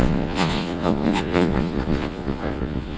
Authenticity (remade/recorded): remade